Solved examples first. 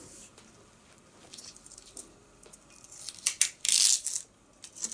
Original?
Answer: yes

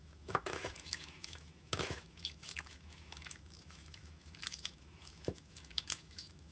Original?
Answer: no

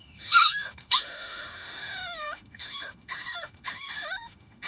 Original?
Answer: no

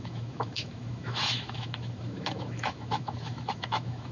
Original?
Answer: no